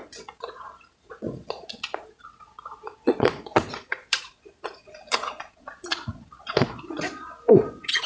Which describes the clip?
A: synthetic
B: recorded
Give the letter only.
A